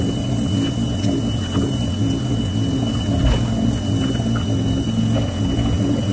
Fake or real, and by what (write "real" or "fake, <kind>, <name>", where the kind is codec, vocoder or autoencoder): real